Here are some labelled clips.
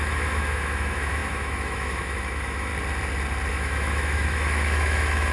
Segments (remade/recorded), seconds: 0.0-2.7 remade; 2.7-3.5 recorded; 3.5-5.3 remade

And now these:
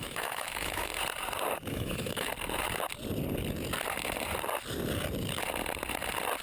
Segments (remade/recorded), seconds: 0.0-0.9 remade; 0.9-1.7 recorded; 1.7-2.3 remade; 2.3-6.4 recorded

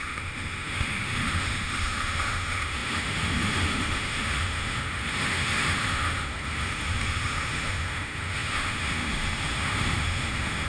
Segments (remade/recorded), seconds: 0.0-10.7 remade

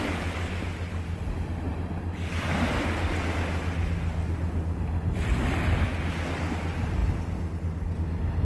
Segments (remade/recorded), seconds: 0.0-8.4 recorded

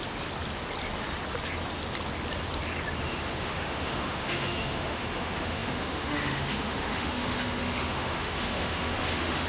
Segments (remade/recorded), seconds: 0.0-3.0 recorded; 3.0-9.5 remade

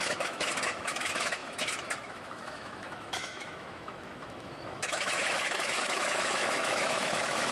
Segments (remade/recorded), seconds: 0.0-7.5 remade